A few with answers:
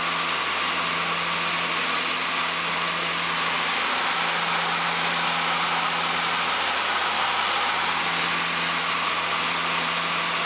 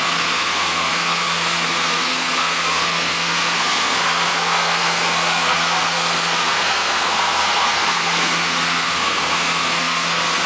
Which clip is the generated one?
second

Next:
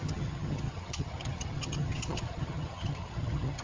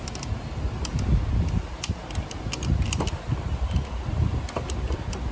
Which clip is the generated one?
first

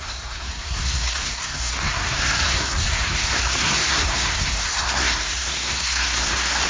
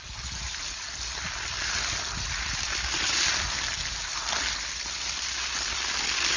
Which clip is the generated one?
first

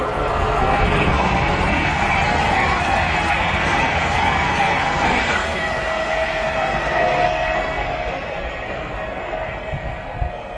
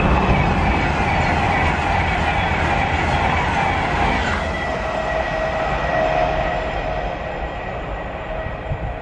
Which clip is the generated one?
first